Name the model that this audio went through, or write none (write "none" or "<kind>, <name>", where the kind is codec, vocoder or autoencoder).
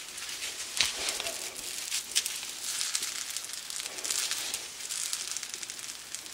none